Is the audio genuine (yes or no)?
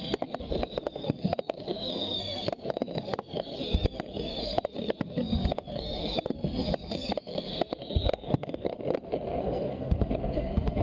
no